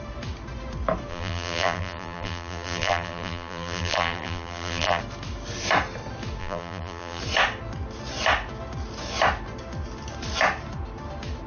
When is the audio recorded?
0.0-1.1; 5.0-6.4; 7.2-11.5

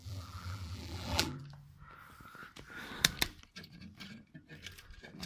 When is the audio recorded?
1.4-5.3